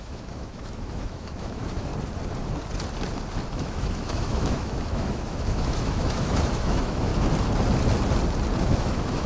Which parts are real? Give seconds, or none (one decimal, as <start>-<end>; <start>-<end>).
1.9-3.5; 7.1-8.6